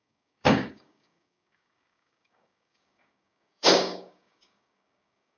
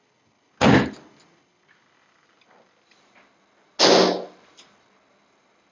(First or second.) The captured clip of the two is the second